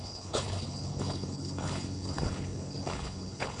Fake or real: fake